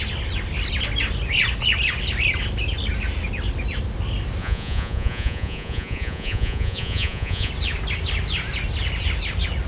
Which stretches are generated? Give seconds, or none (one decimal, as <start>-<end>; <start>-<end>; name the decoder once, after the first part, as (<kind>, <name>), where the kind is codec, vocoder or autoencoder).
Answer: 4.4-7.5 (vocoder, Vocos)